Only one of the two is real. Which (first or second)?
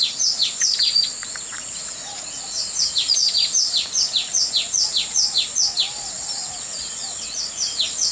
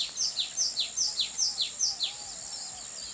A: second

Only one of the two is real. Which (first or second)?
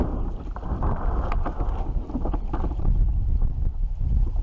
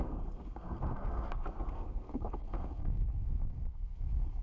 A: first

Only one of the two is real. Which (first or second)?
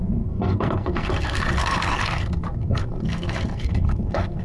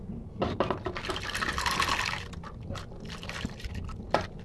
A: second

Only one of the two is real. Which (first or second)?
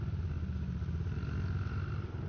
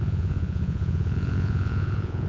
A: first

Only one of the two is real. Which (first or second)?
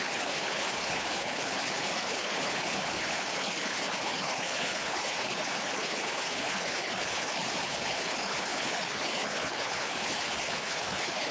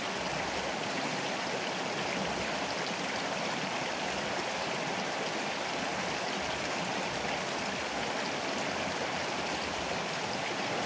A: second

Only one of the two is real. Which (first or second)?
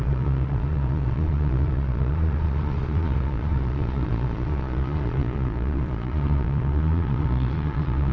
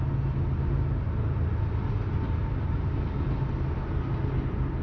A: second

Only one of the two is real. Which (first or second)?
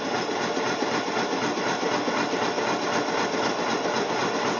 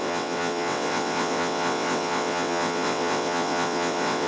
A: first